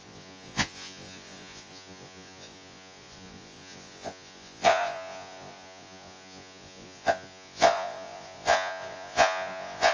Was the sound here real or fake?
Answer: fake